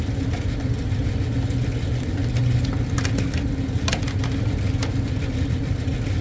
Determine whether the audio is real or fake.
real